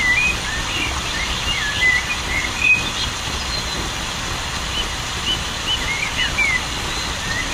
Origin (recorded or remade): recorded